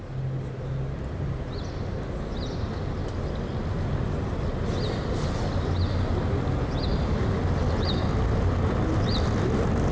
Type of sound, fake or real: real